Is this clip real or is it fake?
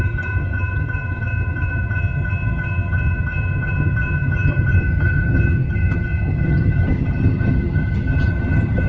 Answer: fake